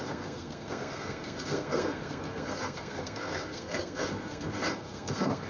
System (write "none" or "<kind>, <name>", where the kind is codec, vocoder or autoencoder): codec, SNAC